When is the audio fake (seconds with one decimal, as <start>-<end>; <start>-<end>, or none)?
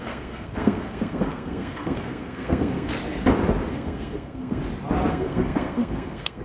0.0-2.9; 3.7-4.6; 5.1-6.4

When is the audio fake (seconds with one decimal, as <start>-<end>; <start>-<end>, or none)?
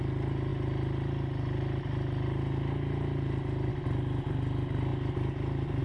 none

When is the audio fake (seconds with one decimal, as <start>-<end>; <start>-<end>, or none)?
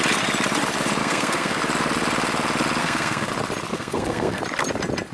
1.0-1.6; 2.8-3.3; 3.7-4.4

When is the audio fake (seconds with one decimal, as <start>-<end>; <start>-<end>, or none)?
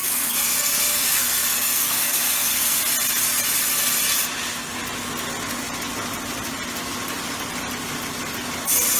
0.0-2.8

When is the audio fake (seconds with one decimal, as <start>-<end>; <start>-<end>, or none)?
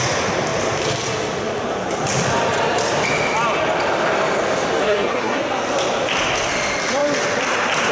4.8-5.4